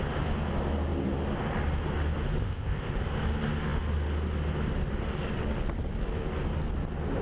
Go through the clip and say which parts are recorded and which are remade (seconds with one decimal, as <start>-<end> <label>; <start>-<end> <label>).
0.0-2.4 recorded; 2.4-2.9 remade; 2.9-7.2 recorded